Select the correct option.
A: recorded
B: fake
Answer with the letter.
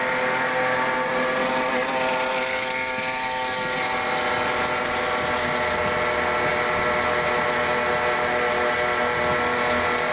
A